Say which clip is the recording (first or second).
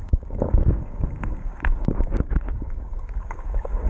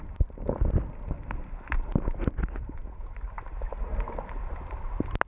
second